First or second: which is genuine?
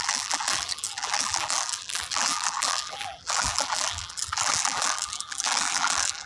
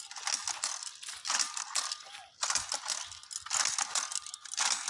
second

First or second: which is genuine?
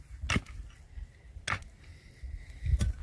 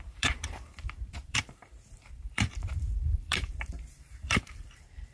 first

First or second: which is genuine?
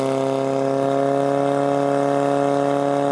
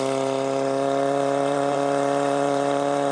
first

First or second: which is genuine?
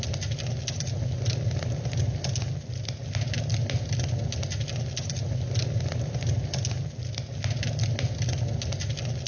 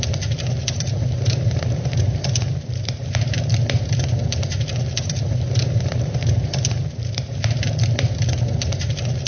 first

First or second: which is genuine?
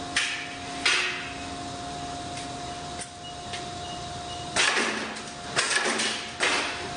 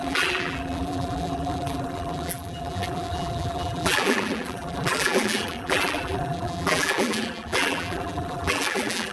first